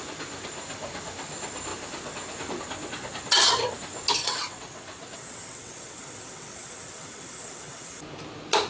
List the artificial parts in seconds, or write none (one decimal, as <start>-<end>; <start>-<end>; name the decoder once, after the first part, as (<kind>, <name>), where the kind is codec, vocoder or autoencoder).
4.2-8.0 (vocoder, WaveNeXt)